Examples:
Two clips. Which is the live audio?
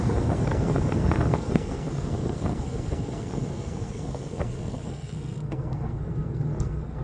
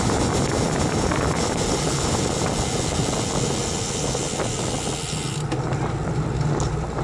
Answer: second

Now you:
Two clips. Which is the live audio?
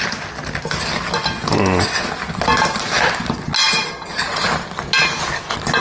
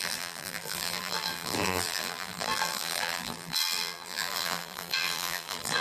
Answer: first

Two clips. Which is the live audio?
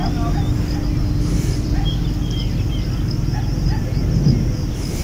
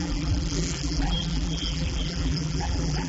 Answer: first